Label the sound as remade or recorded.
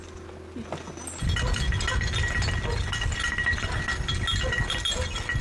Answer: recorded